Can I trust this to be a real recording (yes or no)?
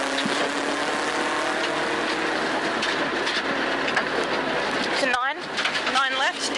yes